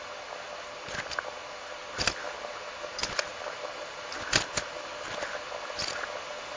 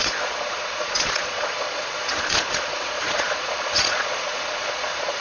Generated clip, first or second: second